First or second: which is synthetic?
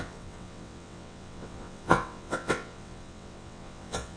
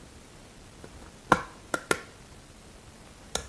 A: first